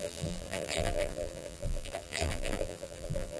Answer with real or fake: fake